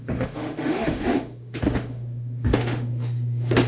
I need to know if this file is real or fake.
fake